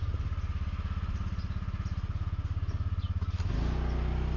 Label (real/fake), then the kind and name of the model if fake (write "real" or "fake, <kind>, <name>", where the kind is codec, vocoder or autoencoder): real